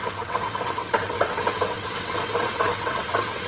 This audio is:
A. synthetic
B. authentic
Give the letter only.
A